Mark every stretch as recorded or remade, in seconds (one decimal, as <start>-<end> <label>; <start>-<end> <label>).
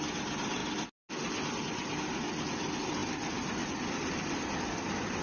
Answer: 0.0-5.2 recorded